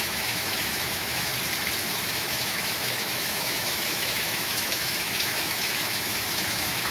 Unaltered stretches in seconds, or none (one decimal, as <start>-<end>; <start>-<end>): 1.3-1.9